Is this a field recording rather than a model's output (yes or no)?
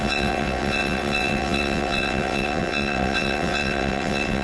no